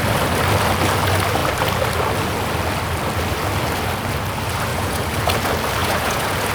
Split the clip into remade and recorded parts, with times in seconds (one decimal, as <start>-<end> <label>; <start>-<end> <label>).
0.0-4.7 recorded; 4.7-5.2 remade; 5.2-5.8 recorded; 5.8-6.5 remade